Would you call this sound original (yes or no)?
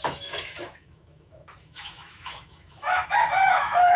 no